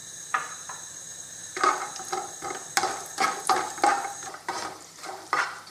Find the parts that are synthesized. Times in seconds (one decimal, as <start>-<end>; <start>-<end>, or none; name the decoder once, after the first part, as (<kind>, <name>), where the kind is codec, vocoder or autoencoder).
3.4-5.7 (vocoder, BigVGAN v2)